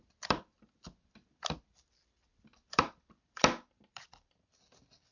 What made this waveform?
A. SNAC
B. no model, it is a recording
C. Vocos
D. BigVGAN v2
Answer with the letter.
D